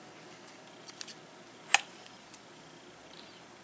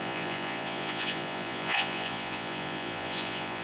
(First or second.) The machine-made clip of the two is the second